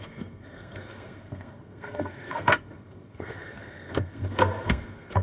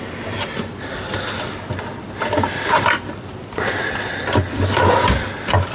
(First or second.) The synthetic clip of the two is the first